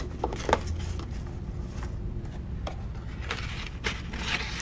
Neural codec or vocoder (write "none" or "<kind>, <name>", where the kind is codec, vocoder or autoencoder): none